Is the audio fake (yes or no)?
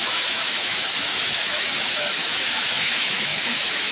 yes